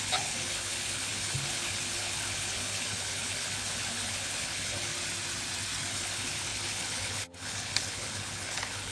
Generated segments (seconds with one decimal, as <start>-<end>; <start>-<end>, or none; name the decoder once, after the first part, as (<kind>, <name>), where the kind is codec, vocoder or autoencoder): 0.0-4.9 (codec, HILCodec); 5.9-8.9